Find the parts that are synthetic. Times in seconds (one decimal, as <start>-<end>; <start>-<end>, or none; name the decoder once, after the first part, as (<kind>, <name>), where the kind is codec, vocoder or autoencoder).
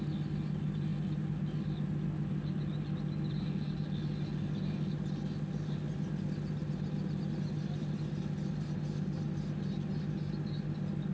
none